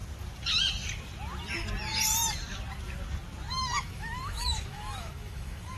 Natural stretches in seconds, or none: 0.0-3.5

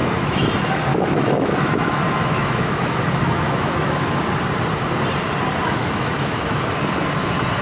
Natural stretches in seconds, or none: 0.5-0.9; 4.2-5.8; 6.6-7.6

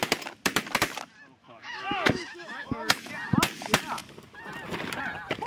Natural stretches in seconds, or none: 0.0-1.4; 3.1-5.5

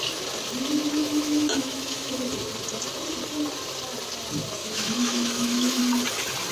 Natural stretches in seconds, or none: 0.0-1.0; 2.2-4.6; 5.8-6.5

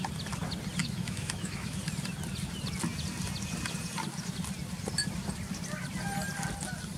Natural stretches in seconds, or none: 0.0-0.8; 1.8-7.0